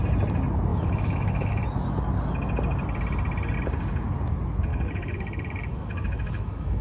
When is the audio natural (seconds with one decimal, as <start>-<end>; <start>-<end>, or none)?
0.0-0.7; 1.6-4.7